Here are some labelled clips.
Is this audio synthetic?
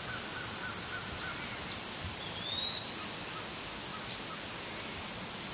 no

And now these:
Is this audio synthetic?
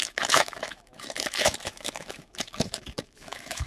yes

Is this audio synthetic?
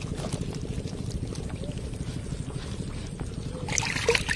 no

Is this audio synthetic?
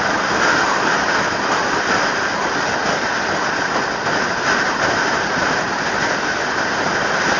no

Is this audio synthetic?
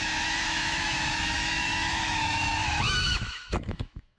yes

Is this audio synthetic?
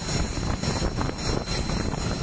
no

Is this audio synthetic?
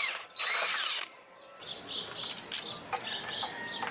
no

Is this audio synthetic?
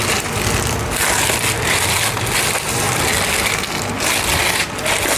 no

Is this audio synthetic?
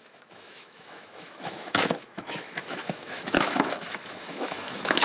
yes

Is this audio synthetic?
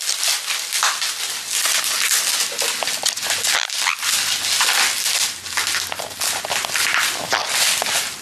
no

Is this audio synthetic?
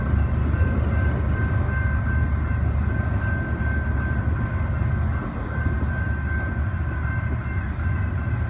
no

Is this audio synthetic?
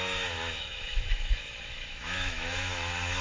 yes